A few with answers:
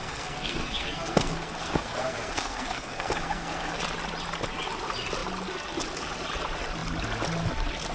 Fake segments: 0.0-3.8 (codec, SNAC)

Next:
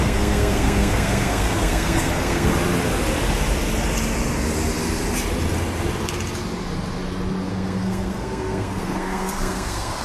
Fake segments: 0.0-2.5 (codec, SNAC); 7.5-10.0